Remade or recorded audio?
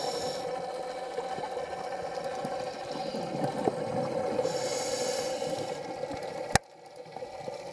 recorded